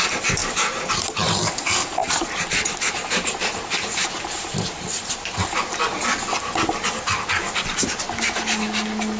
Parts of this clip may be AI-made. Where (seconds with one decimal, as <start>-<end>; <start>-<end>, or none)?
0.4-1.4; 2.0-5.5